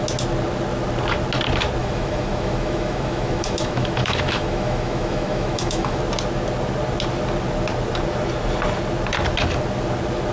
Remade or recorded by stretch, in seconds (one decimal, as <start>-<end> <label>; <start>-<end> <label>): 0.0-1.8 recorded; 1.8-6.0 remade; 6.0-10.3 recorded